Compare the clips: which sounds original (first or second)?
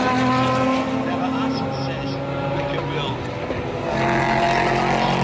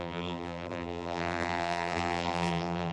first